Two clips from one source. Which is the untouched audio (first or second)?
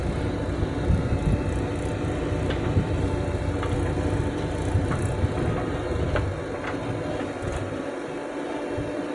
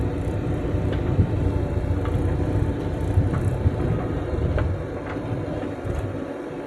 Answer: first